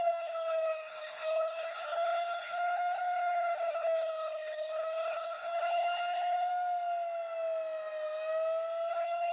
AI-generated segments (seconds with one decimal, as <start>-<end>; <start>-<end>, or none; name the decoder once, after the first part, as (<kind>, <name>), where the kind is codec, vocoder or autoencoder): 0.0-6.5 (codec, HILCodec); 8.9-9.3

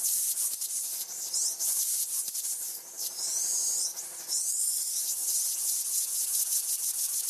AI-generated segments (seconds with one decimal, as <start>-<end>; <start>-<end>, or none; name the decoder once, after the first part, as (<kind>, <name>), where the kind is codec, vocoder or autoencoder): 5.5-6.7 (vocoder, Vocos)